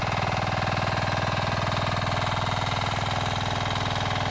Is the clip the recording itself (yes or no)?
yes